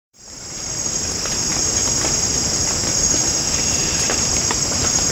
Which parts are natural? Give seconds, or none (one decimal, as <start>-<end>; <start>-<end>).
0.7-3.8; 4.3-5.1